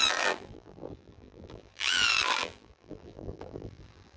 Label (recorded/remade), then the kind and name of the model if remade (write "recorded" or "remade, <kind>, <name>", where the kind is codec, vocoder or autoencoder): remade, vocoder, BigVGAN v2